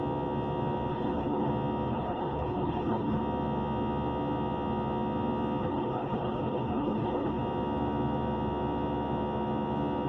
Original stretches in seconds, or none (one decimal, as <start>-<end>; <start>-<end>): 0.0-0.9; 1.5-1.9; 3.2-5.6; 7.4-10.1

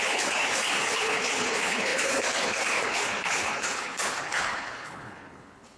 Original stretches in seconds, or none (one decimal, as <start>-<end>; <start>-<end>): none

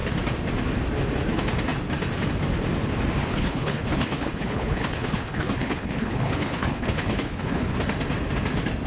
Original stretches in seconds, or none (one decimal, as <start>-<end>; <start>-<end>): 0.0-3.2; 7.7-8.9

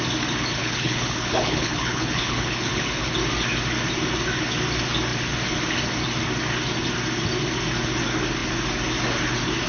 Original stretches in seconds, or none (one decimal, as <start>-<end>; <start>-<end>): 0.0-0.6; 3.1-9.7

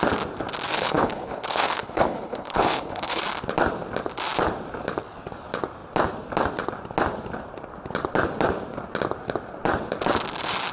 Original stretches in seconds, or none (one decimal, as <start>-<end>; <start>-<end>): 0.0-0.7; 3.2-10.7